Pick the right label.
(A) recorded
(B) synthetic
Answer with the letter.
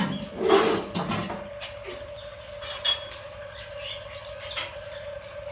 A